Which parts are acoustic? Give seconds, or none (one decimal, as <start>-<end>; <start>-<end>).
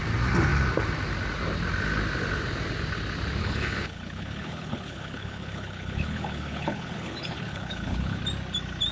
0.0-3.4; 8.2-8.9